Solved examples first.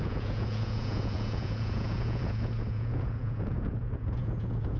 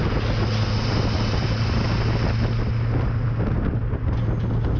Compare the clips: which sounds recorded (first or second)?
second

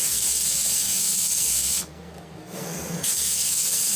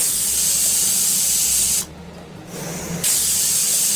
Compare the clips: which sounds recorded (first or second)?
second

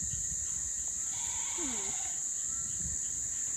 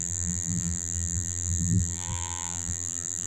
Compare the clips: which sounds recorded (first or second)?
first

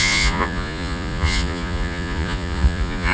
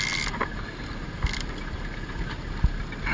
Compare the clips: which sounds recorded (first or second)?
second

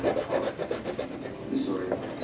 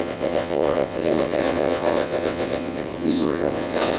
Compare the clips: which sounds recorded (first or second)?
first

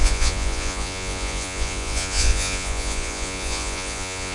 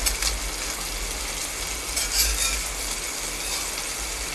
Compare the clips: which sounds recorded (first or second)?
second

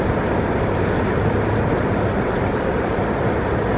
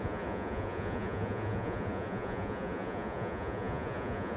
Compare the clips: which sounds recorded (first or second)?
first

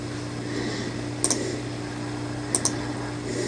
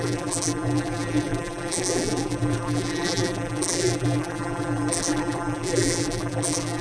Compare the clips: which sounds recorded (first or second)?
first